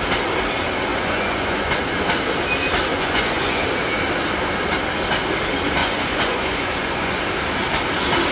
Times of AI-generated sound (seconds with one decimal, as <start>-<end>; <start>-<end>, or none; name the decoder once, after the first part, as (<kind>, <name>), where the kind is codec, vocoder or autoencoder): 0.9-1.8 (vocoder, Vocos); 2.9-3.6; 5.8-7.2